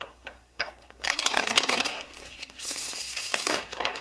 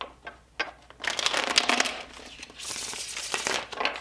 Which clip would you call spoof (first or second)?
first